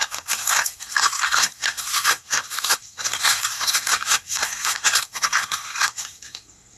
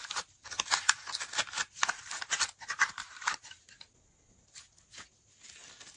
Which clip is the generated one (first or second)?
first